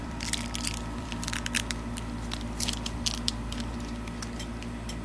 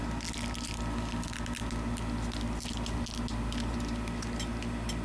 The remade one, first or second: first